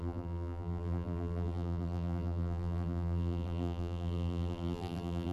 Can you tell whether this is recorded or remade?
remade